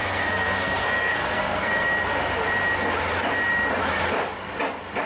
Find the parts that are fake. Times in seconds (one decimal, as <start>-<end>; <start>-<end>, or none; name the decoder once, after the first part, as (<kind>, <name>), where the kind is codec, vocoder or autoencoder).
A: 0.0-1.9 (codec, SNAC)